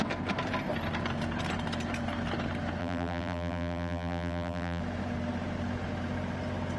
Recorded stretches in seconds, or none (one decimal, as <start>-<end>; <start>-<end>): 0.0-2.8; 4.8-6.8